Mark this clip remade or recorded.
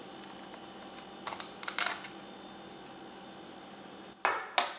recorded